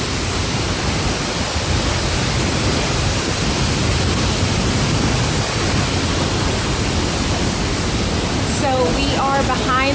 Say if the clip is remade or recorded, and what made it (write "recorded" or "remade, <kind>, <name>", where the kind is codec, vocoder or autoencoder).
recorded